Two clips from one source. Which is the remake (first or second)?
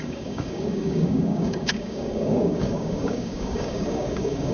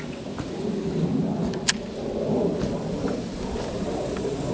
first